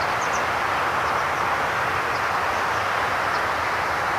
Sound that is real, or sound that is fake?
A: real